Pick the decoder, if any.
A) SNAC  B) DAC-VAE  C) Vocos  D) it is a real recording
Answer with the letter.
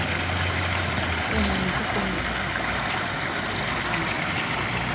D